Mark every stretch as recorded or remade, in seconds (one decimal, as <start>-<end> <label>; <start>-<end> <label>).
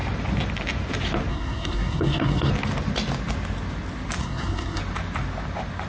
0.0-1.3 recorded; 1.3-2.5 remade; 2.5-4.2 recorded; 4.2-4.8 remade; 4.8-5.9 recorded